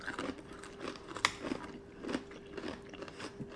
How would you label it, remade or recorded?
recorded